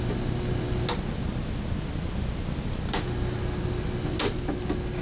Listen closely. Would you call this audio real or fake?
real